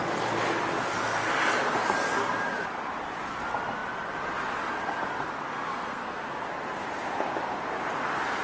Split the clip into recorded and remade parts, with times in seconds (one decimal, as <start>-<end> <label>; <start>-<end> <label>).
0.0-5.7 recorded; 5.7-6.2 remade; 6.2-8.4 recorded

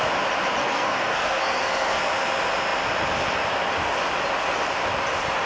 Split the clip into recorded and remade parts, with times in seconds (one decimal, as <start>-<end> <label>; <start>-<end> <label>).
0.0-0.6 recorded; 0.6-2.0 remade; 2.0-5.5 recorded

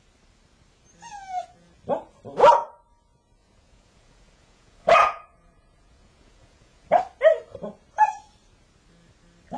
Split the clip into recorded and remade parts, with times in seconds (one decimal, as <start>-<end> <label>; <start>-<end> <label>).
0.0-3.4 recorded; 3.4-7.0 remade; 7.0-9.6 recorded

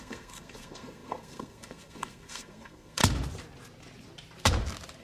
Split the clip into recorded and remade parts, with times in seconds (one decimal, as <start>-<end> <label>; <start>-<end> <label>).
0.0-3.0 remade; 3.0-5.0 recorded

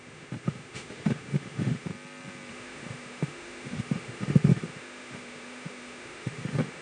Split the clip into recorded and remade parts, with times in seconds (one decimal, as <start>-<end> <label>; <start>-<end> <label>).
0.0-1.9 remade; 1.9-2.5 recorded; 2.5-6.8 remade